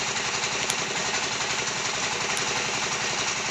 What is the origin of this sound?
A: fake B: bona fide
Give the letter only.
A